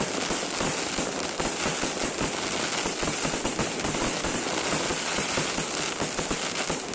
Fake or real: real